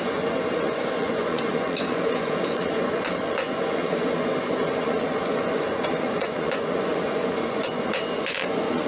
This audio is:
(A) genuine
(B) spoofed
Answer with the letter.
B